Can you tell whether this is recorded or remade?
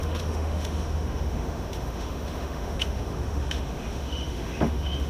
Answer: remade